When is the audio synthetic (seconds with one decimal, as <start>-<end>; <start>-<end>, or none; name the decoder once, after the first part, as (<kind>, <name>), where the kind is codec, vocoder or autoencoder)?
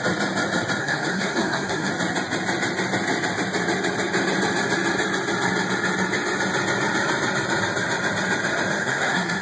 0.8-1.9 (codec, SNAC); 8.8-9.4